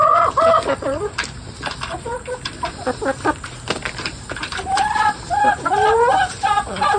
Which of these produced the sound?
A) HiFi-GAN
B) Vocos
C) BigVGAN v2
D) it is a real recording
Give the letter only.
C